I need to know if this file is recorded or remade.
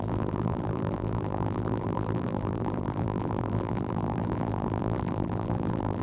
remade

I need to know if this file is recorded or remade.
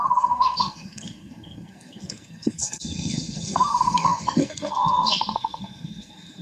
remade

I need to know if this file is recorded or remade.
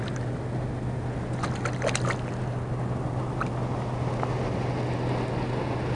recorded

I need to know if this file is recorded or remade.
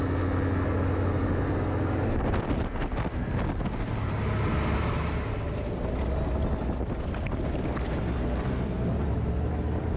recorded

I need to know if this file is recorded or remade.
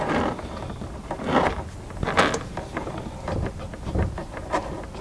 recorded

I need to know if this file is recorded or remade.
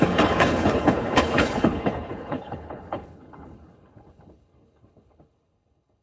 remade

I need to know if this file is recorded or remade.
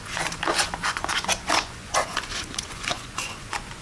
remade